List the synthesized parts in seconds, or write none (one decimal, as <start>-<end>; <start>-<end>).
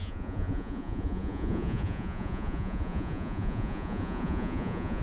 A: 0.0-5.0